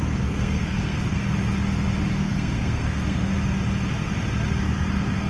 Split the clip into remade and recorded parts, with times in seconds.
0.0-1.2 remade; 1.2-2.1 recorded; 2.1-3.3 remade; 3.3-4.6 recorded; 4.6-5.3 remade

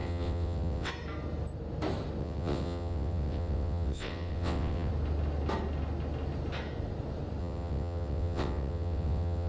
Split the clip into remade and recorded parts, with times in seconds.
0.0-0.9 remade; 0.9-2.2 recorded; 2.2-4.9 remade; 4.9-7.4 recorded; 7.4-9.5 remade